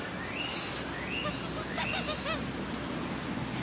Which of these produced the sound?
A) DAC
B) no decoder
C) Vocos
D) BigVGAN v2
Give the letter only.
B